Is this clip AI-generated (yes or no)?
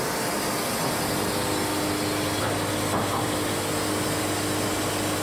no